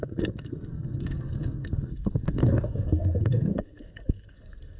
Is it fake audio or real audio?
fake